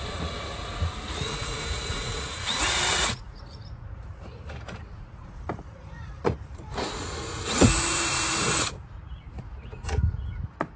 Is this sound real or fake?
fake